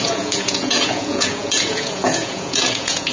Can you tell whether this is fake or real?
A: fake